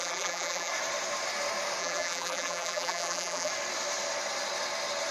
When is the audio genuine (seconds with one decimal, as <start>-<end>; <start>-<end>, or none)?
0.7-1.8; 3.5-5.1